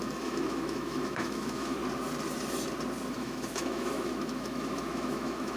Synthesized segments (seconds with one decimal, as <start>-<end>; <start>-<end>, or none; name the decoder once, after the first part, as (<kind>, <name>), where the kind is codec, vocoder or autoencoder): 0.0-1.8 (autoencoder, DAC-VAE); 3.1-5.6